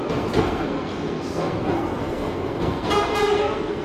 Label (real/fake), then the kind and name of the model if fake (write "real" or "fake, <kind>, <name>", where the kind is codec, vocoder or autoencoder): fake, codec, SNAC